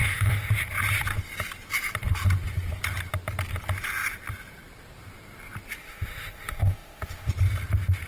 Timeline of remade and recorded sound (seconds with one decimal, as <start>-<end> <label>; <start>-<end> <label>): 0.0-0.5 remade; 0.5-5.8 recorded; 5.8-7.3 remade; 7.3-8.1 recorded